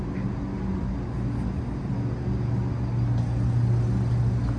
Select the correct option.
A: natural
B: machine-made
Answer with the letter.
A